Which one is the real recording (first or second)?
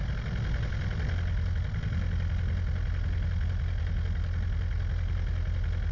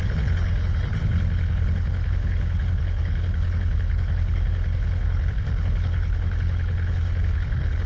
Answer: first